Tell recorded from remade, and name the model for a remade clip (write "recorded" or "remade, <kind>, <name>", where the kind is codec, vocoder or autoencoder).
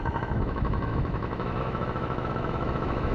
remade, autoencoder, DAC-VAE